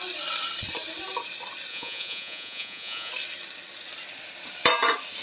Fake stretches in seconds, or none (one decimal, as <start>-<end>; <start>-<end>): 1.7-3.1